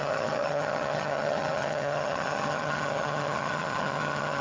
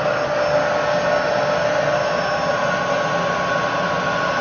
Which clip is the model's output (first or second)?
first